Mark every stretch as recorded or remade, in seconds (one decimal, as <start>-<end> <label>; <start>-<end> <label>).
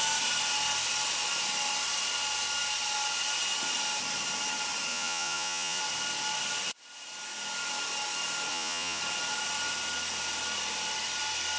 0.0-4.9 recorded; 4.9-5.8 remade; 5.8-8.5 recorded; 8.5-9.0 remade; 9.0-11.6 recorded